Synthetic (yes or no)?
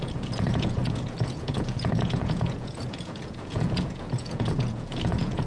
yes